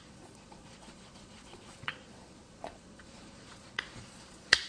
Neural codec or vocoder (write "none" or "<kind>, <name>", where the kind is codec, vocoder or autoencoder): vocoder, Vocos